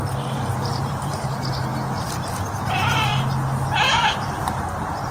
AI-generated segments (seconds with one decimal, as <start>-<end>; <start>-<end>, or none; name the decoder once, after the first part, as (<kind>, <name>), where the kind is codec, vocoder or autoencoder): 0.0-1.7 (vocoder, BigVGAN v2); 2.5-3.1; 4.3-5.1